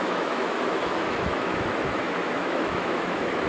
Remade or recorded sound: remade